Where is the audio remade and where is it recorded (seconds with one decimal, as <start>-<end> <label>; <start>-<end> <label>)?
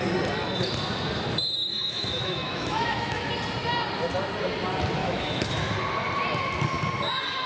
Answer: 0.0-1.6 recorded; 1.6-3.3 remade; 3.3-5.0 recorded; 5.0-5.7 remade; 5.7-7.5 recorded